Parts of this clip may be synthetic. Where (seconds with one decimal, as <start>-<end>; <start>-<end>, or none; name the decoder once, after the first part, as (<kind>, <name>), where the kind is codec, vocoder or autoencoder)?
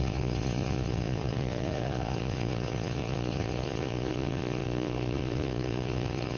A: 0.0-6.4 (vocoder, Vocos)